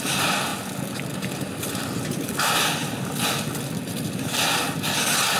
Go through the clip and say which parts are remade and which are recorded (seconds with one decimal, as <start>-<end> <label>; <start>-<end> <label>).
0.0-5.4 recorded